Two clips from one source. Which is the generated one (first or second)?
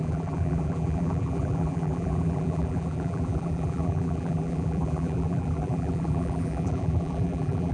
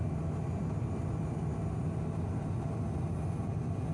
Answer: first